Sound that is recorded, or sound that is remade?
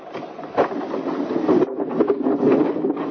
recorded